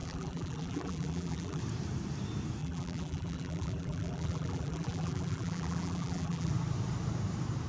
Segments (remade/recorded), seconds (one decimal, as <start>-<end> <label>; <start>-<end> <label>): 0.0-1.6 remade; 1.6-2.6 recorded; 2.6-6.5 remade; 6.5-7.7 recorded